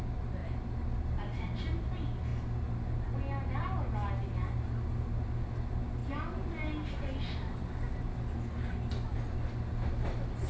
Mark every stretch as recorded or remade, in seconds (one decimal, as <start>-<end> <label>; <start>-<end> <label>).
0.0-10.5 recorded